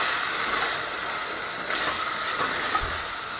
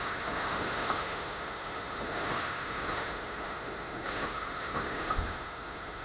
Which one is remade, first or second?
second